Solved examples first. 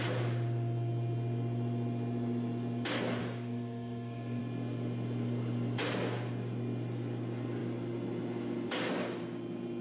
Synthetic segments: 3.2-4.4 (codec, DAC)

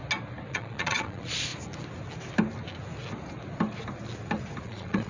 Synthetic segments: 0.5-1.5 (vocoder, Vocos); 4.6-5.1

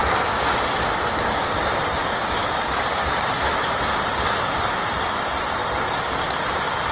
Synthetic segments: 0.0-0.5 (codec, DAC)